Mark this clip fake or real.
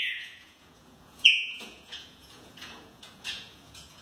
fake